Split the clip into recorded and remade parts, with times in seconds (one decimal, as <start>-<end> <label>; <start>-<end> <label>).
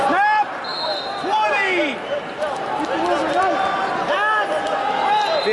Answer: 0.0-5.5 recorded